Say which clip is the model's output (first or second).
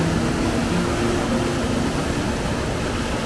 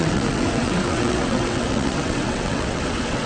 second